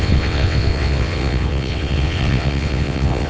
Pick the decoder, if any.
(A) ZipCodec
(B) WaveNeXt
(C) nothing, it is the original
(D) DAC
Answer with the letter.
B